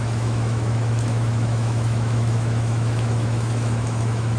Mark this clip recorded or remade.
remade